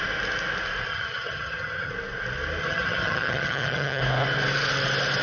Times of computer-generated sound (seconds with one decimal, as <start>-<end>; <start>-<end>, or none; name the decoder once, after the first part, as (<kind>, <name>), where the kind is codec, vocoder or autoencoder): 0.9-1.9 (vocoder, HiFi-GAN); 2.6-4.0